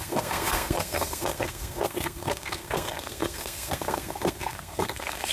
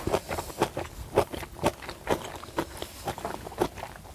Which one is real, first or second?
second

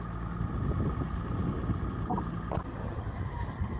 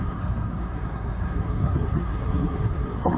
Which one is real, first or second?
first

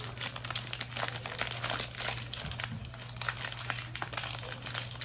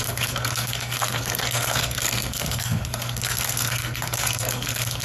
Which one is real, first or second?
first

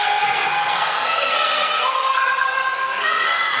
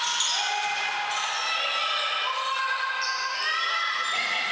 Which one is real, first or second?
second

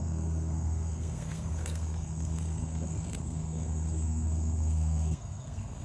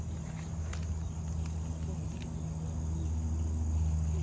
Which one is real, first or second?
second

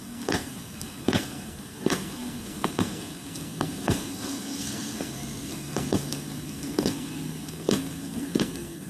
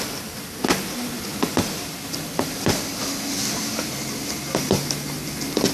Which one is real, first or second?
second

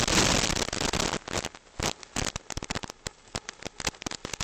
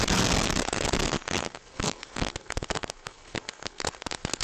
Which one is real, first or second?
first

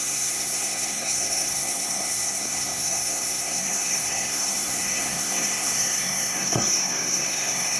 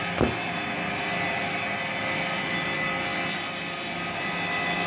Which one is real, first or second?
second